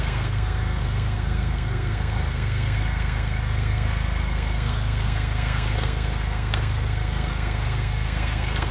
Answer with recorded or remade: remade